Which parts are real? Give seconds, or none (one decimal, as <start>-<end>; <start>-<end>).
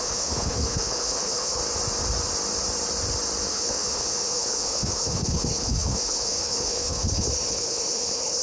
1.6-3.5